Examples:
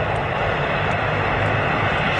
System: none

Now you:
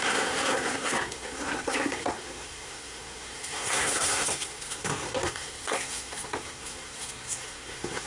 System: codec, SNAC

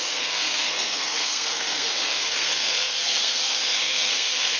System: codec, SNAC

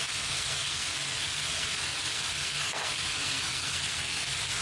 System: codec, SNAC